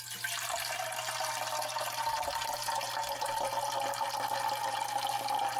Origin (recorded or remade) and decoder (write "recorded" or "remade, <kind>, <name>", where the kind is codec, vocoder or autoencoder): recorded